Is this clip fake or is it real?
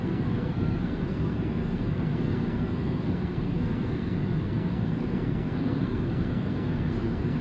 fake